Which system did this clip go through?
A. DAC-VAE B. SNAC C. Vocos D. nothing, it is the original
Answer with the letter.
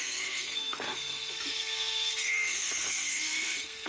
B